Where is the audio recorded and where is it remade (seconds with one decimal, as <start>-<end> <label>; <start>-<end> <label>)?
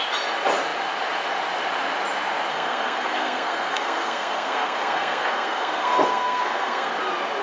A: 0.0-2.5 recorded; 2.5-6.9 remade; 6.9-7.4 recorded